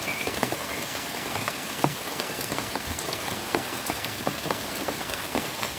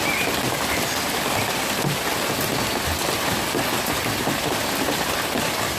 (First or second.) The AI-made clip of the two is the first